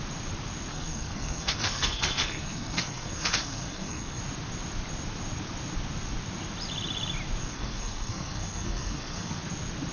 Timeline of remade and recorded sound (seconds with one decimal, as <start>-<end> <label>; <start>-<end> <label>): 0.0-0.7 recorded; 0.7-4.2 remade; 4.2-7.4 recorded; 7.4-9.4 remade; 9.4-9.9 recorded